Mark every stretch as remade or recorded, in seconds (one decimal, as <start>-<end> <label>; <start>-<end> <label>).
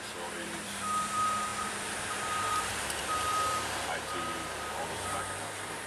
0.0-5.9 remade